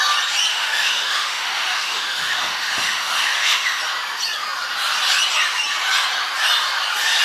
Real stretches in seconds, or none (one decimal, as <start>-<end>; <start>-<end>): 0.0-0.5; 3.8-7.2